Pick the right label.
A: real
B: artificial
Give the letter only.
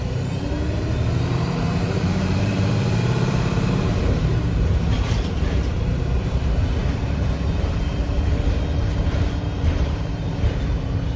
B